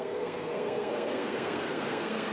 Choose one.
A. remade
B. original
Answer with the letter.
A